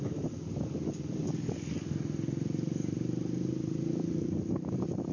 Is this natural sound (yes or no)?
yes